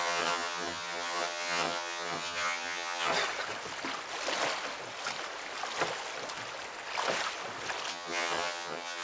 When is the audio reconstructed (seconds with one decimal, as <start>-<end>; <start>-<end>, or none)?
0.0-3.1; 7.9-9.0